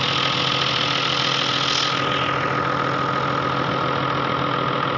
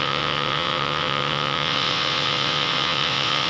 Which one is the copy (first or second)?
second